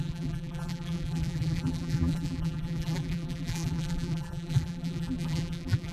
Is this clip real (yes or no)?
no